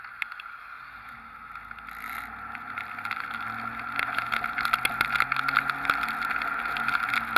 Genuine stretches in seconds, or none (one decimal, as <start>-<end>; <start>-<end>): 0.0-7.4